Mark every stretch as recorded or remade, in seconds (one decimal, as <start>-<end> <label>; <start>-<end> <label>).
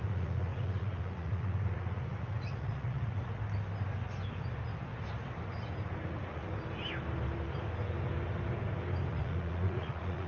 0.0-3.4 remade; 3.4-6.0 recorded; 6.0-6.4 remade; 6.4-9.1 recorded; 9.1-10.3 remade